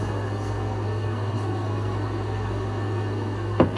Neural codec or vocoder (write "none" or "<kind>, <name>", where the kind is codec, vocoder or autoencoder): codec, SNAC